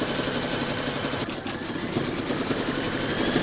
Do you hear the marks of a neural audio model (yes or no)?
no